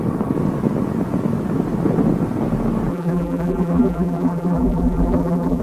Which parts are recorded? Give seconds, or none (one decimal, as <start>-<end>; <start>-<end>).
0.0-2.9

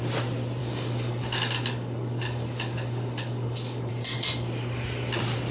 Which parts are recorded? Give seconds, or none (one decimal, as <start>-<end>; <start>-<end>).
0.0-0.6; 3.9-5.5

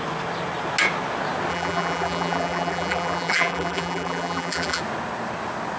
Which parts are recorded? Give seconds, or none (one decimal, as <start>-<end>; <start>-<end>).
0.0-1.5; 4.8-5.8

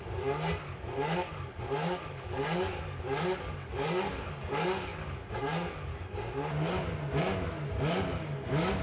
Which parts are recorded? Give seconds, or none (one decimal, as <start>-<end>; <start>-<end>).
5.9-7.2

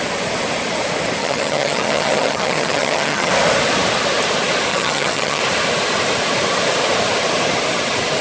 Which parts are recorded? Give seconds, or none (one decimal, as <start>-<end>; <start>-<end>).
0.0-1.2; 3.3-4.7; 5.4-8.2